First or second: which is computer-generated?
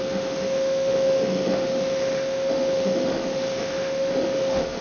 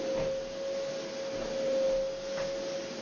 first